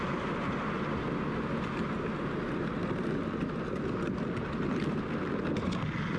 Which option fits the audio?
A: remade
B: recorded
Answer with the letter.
B